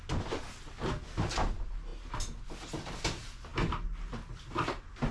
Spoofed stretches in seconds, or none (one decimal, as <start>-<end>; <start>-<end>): none